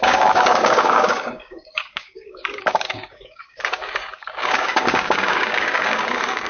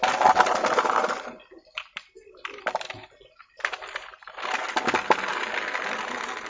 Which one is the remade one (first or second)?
first